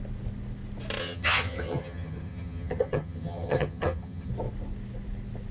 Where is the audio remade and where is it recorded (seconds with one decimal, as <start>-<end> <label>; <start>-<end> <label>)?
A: 0.0-1.0 recorded; 1.0-4.3 remade; 4.3-5.5 recorded